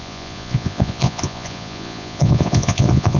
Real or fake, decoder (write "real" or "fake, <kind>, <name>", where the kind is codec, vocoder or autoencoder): fake, vocoder, Vocos